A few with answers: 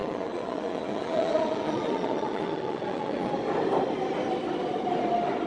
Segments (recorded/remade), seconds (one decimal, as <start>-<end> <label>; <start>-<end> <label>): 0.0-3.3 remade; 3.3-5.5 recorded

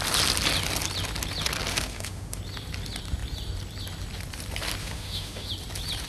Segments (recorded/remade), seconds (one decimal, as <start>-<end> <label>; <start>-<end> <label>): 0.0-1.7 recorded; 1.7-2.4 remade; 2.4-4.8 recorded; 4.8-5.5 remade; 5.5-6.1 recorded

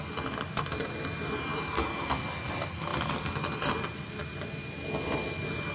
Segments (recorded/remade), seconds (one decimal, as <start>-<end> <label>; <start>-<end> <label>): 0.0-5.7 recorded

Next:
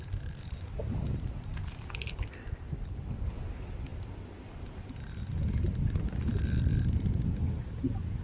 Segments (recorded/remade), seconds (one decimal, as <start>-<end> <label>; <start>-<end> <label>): 0.0-8.2 recorded